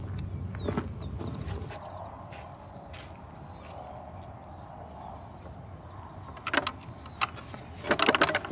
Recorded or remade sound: recorded